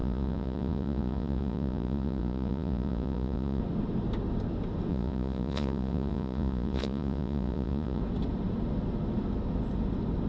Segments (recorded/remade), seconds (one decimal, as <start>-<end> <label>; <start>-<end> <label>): 0.0-3.6 remade; 3.6-4.9 recorded; 4.9-8.0 remade; 8.0-10.3 recorded